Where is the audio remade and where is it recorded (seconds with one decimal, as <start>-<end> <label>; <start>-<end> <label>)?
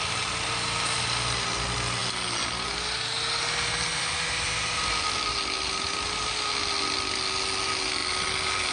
0.0-8.7 recorded